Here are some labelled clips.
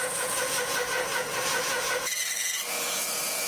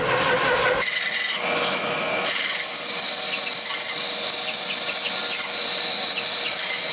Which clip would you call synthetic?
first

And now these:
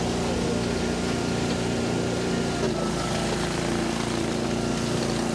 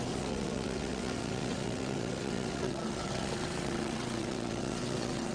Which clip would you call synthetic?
second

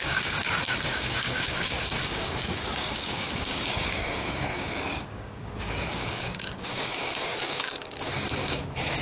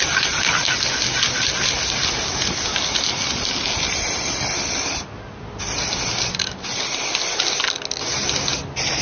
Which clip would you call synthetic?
first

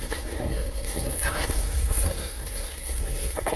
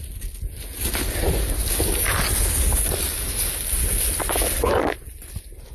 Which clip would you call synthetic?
first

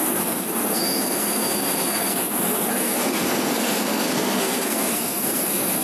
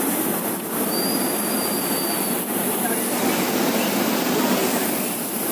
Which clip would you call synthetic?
first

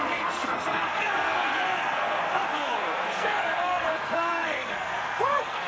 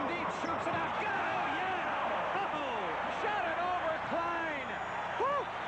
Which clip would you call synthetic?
first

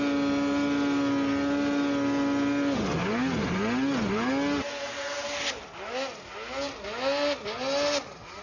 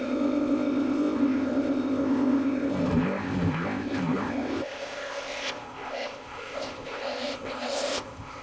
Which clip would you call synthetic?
second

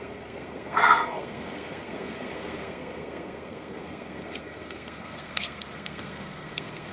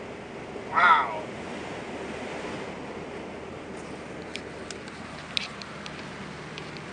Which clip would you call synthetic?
first